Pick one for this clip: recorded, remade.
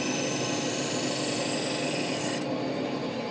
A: recorded